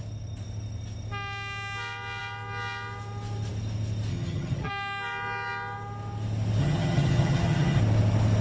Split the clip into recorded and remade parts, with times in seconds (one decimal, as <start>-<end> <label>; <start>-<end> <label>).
0.0-4.1 recorded; 4.1-4.7 remade; 4.7-6.6 recorded; 6.6-7.8 remade; 7.8-8.4 recorded